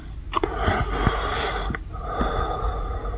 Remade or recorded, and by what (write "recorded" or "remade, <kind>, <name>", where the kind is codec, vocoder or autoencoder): recorded